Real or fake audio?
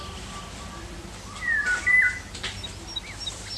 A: real